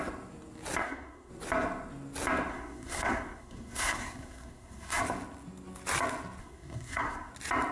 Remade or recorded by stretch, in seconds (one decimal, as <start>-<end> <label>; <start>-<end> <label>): 0.0-0.8 recorded; 0.8-1.3 remade; 1.3-2.5 recorded; 2.5-5.0 remade; 5.0-6.4 recorded; 6.4-7.3 remade; 7.3-7.7 recorded